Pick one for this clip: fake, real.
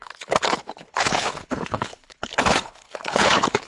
fake